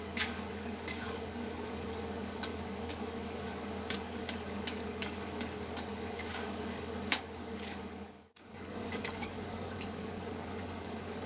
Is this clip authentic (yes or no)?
no